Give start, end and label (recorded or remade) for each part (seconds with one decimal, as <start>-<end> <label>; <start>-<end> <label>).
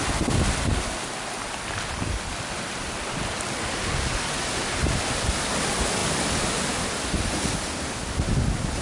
0.0-8.8 recorded